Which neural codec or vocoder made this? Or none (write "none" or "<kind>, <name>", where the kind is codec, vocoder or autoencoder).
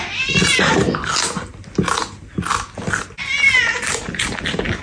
none